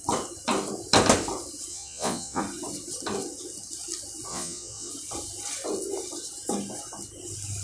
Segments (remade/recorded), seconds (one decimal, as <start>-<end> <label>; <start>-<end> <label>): 0.0-1.7 recorded; 1.7-2.4 remade; 2.4-4.3 recorded; 4.3-4.9 remade; 4.9-7.6 recorded